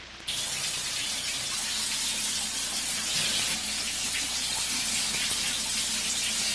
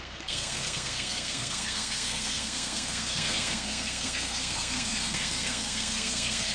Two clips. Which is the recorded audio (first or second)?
first